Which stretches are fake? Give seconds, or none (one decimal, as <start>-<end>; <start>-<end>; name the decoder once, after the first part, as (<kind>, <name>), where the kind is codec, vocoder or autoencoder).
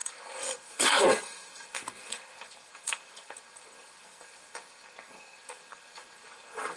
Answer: 0.0-6.8 (codec, SNAC)